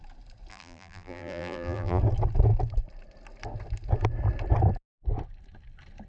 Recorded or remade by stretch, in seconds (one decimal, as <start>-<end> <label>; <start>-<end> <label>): 0.0-0.5 recorded; 0.5-2.0 remade; 2.0-6.1 recorded